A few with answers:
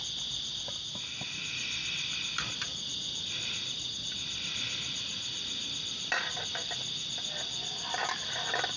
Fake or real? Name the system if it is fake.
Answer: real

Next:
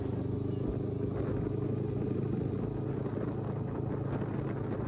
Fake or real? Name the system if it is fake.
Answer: real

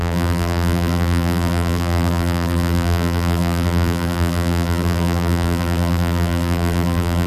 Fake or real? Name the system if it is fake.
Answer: fake, vocoder, BigVGAN v2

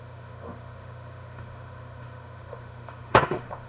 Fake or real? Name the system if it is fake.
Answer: fake, autoencoder, DAC-VAE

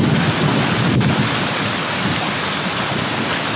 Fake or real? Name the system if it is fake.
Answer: real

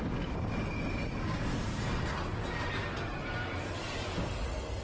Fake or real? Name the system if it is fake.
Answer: real